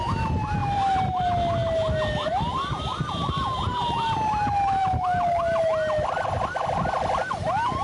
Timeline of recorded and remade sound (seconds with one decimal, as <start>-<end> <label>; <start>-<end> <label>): 0.0-0.6 recorded; 0.6-1.2 remade; 1.2-2.9 recorded; 2.9-3.6 remade; 3.6-7.8 recorded